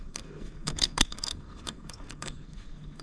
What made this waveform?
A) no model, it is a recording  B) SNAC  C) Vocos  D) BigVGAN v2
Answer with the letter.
B